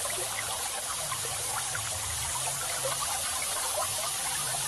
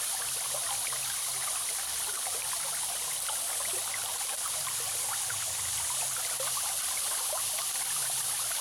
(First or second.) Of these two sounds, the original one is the second